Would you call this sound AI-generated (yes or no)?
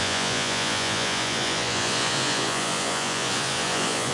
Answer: yes